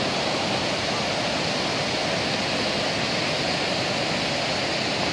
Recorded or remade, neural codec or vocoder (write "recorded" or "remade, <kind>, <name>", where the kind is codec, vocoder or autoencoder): recorded